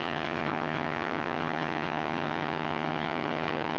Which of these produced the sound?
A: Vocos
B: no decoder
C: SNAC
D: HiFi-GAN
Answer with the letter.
D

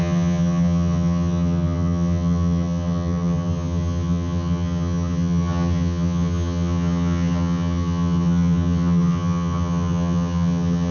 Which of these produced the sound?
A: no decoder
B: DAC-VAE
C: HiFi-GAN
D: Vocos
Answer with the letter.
C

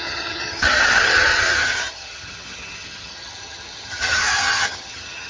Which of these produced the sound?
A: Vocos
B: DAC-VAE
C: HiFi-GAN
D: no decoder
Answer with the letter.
C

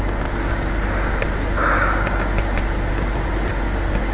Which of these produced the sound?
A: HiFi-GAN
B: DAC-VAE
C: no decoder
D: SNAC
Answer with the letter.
C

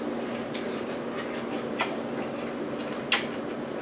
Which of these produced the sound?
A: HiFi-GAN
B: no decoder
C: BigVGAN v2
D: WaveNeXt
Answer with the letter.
B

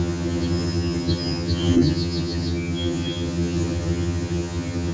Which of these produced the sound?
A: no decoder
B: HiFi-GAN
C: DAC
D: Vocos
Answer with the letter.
B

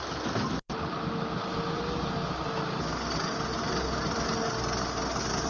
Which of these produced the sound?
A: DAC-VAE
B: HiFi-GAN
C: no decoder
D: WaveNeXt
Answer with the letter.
C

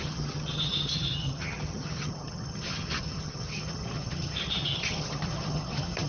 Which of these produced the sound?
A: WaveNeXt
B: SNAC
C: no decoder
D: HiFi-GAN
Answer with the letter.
D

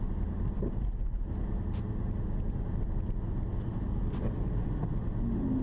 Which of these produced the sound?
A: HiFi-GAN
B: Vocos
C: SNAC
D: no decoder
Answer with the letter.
D